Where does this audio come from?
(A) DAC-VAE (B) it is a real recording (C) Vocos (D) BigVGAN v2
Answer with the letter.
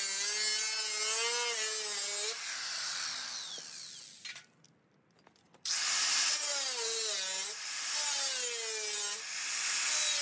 B